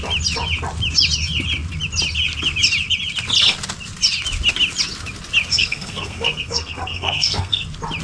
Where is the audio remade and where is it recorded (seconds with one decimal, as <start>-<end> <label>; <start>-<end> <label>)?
0.0-5.5 recorded; 5.5-7.6 remade; 7.6-8.0 recorded

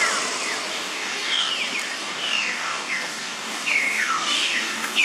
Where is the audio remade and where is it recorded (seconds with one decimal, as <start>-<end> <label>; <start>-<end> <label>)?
0.0-0.7 recorded; 0.7-1.5 remade; 1.5-2.0 recorded; 2.0-5.0 remade

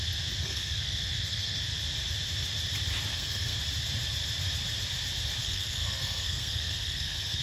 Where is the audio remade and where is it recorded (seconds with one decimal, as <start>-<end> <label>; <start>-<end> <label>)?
0.0-0.4 recorded; 0.4-1.6 remade; 1.6-3.1 recorded; 3.1-3.6 remade; 3.6-5.4 recorded; 5.4-7.4 remade